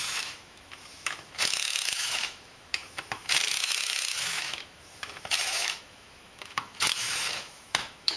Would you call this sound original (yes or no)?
no